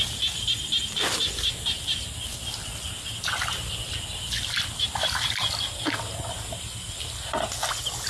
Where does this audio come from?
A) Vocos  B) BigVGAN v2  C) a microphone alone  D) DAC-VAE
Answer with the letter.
C